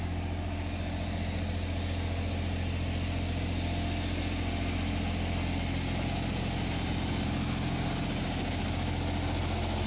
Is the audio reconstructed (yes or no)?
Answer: no